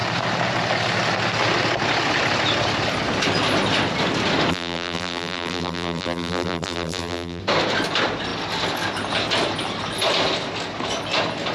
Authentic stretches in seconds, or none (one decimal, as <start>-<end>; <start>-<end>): 0.0-4.5; 7.4-11.5